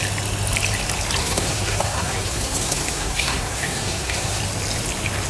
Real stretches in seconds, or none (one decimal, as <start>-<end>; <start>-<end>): 0.0-1.2; 4.4-5.3